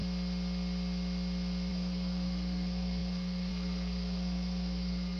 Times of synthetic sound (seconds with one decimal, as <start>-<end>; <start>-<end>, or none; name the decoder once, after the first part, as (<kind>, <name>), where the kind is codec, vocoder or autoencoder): 1.7-5.2 (codec, SNAC)